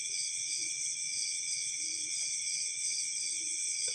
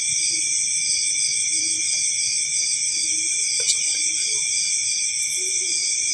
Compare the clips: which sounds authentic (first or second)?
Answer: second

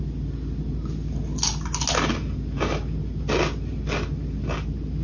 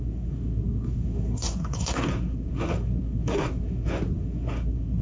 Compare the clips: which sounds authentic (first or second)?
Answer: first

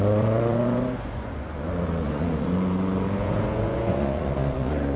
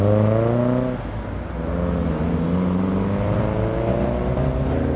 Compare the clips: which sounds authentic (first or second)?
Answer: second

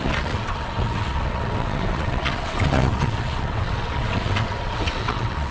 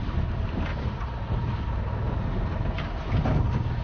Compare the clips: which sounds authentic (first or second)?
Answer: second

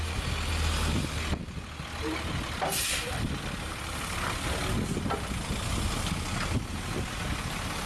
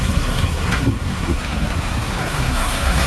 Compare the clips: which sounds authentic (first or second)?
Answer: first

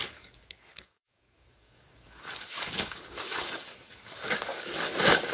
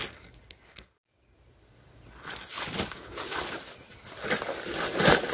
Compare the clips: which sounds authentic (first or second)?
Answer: second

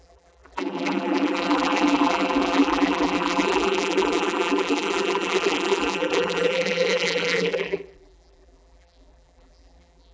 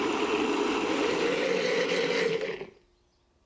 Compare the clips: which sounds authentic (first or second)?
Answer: second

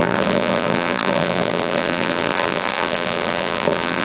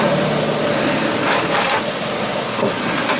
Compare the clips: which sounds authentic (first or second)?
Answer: second